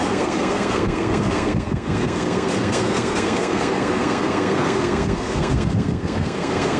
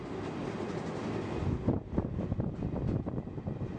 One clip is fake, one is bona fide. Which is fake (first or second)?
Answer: first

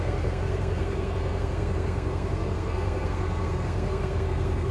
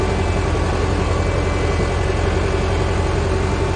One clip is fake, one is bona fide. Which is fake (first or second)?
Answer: first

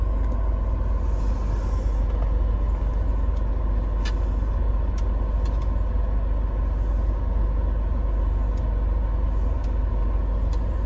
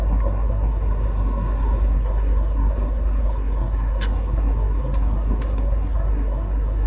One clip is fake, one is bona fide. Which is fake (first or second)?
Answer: second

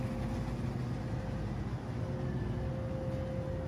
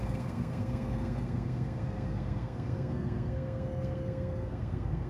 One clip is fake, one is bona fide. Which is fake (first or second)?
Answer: second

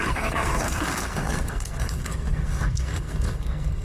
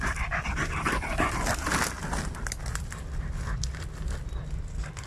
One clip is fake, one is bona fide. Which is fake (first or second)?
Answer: first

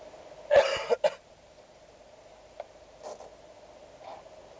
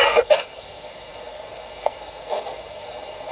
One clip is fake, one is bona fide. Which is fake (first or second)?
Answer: second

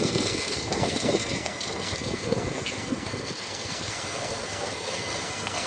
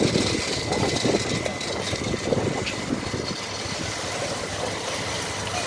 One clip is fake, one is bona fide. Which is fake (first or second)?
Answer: first